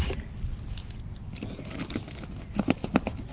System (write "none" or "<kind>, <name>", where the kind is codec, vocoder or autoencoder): none